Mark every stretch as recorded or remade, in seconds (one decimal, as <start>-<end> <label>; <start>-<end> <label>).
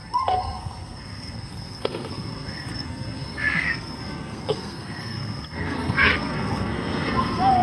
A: 0.0-7.6 remade